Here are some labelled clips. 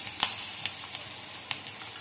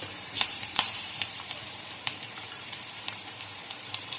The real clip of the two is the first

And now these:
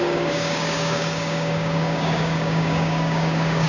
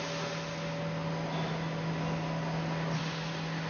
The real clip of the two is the second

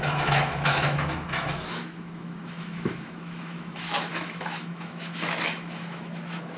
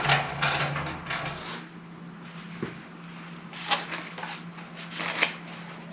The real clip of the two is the second